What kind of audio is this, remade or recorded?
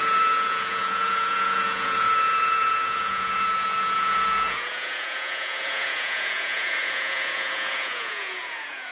remade